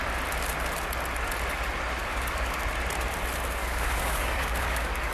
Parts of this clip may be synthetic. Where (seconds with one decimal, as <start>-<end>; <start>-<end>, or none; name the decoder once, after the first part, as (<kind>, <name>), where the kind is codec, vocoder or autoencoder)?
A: 2.0-2.6 (codec, DAC); 3.6-5.1